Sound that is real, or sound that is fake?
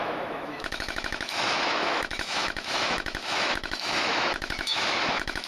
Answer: fake